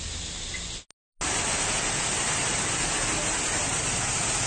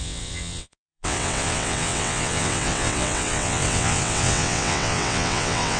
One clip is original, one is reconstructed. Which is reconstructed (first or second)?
second